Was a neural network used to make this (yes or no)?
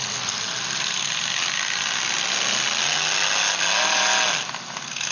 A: no